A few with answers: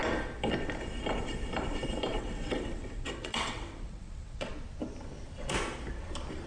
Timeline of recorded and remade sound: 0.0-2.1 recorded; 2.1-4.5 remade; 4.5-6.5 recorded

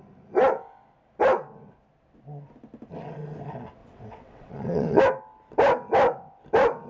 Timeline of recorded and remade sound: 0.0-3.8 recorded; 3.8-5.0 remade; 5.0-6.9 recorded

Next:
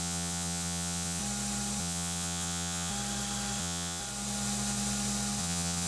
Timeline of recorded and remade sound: 0.0-1.2 remade; 1.2-1.8 recorded; 1.8-2.9 remade; 2.9-3.6 recorded; 3.6-4.0 remade; 4.0-5.4 recorded; 5.4-5.9 remade

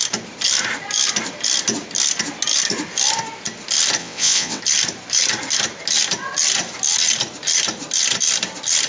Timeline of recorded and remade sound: 0.0-4.0 recorded; 4.0-4.6 remade; 4.6-8.9 recorded

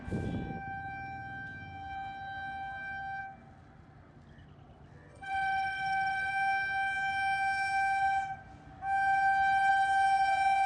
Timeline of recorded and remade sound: 0.0-5.1 recorded; 5.1-6.3 remade; 6.3-10.7 recorded

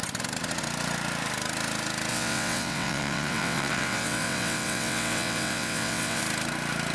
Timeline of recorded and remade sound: 0.0-2.1 recorded; 2.1-6.2 remade; 6.2-6.9 recorded

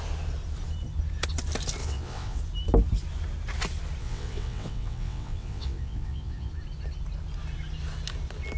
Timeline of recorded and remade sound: 0.0-1.8 recorded; 1.8-2.4 remade; 2.4-4.0 recorded; 4.0-6.5 remade; 6.5-8.6 recorded

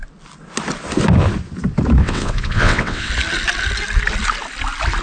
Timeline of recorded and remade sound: 0.0-2.0 recorded; 2.0-3.1 remade; 3.1-5.0 recorded